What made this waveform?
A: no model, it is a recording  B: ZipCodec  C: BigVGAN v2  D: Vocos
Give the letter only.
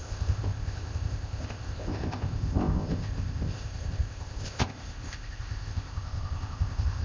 B